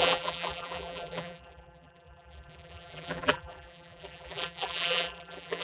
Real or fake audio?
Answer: fake